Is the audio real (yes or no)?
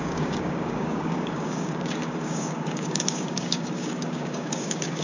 no